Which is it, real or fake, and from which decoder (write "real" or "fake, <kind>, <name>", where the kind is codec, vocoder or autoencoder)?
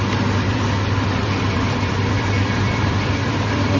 fake, vocoder, BigVGAN v2